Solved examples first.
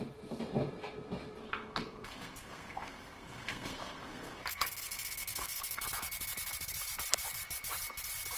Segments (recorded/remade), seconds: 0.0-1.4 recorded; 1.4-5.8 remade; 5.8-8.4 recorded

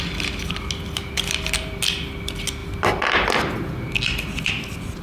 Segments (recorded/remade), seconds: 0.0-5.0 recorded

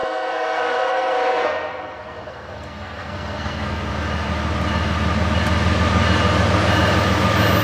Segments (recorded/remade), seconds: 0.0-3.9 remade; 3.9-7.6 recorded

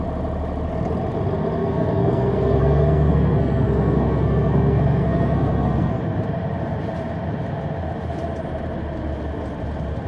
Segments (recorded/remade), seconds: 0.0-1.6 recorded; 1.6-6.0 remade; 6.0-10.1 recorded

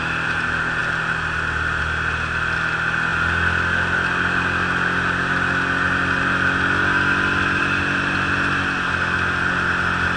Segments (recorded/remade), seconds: 0.0-10.2 recorded